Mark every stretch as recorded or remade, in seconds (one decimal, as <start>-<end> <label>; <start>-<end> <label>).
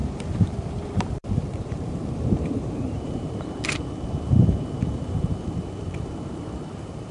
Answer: 0.0-7.1 remade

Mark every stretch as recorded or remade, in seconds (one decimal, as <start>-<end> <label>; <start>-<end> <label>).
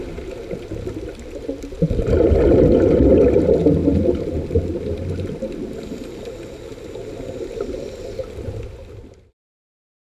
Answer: 0.0-10.1 recorded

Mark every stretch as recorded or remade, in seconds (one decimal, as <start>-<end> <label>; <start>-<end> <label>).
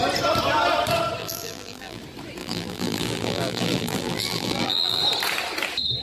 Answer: 0.0-1.2 recorded; 1.2-2.0 remade; 2.0-2.4 recorded; 2.4-5.0 remade; 5.0-6.0 recorded